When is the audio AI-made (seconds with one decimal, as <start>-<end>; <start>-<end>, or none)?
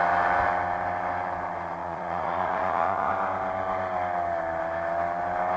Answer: 1.8-3.1